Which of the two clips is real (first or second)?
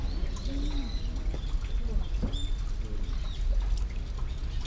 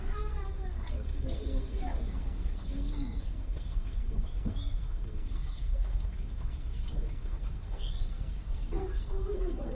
first